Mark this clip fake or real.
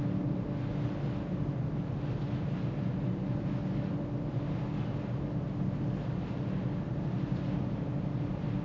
real